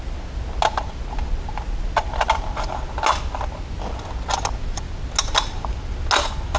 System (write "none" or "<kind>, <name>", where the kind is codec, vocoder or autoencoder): none